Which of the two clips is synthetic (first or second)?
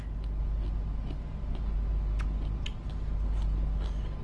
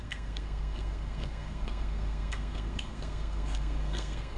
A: second